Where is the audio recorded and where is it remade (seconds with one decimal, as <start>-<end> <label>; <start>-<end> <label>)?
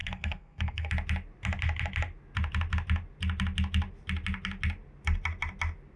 0.0-0.9 remade; 0.9-6.0 recorded